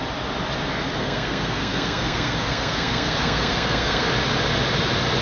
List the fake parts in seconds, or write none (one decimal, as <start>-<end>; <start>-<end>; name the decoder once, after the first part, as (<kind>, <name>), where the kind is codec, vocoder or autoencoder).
1.0-4.1 (codec, SNAC)